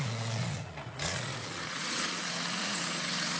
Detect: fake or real fake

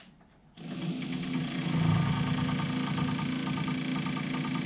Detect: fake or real real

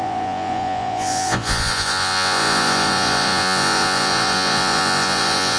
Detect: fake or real fake